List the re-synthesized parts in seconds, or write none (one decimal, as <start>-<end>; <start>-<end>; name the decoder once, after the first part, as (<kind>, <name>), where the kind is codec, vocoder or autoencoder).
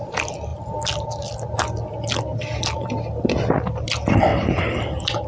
none